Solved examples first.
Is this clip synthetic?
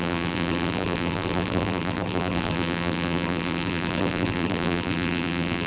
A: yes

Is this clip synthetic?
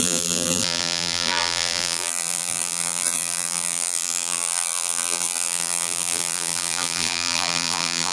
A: yes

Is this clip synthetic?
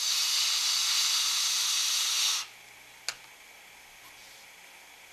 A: no